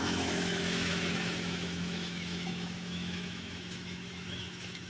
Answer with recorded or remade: remade